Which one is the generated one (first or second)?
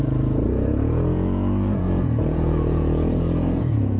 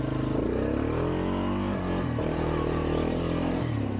first